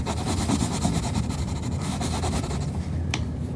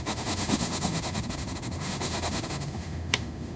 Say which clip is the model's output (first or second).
second